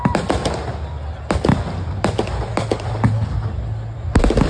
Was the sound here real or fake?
real